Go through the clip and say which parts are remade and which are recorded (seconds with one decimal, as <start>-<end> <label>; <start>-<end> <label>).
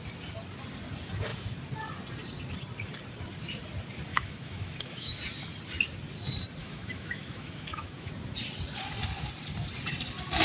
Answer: 0.0-4.1 recorded; 4.1-5.2 remade; 5.2-6.6 recorded; 6.6-8.1 remade; 8.1-10.4 recorded